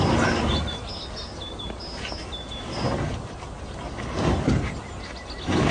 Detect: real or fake real